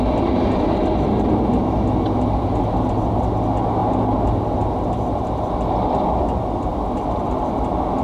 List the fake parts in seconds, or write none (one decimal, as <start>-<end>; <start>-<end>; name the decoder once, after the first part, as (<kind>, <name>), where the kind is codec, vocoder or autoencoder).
none